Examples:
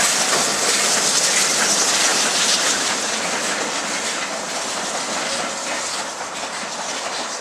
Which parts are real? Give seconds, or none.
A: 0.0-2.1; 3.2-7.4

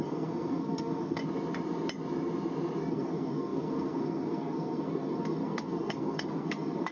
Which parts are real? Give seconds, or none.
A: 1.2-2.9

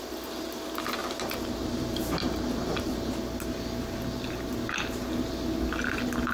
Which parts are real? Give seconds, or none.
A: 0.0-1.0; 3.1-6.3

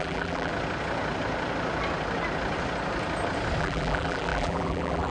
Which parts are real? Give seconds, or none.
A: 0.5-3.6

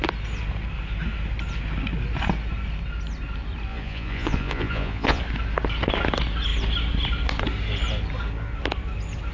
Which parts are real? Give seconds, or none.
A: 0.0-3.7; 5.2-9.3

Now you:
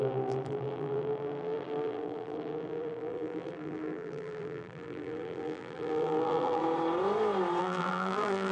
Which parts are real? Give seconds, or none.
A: 6.6-7.6

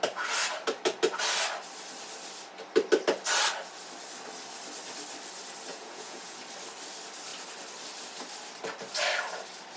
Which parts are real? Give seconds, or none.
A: 0.0-5.7; 6.4-9.8

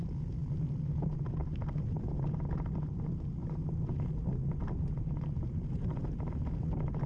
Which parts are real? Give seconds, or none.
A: 0.0-1.4; 2.4-3.4; 6.3-7.1